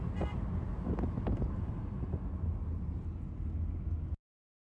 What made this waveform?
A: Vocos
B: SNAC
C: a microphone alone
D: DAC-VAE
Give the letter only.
C